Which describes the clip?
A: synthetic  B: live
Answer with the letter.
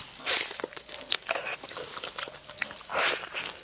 B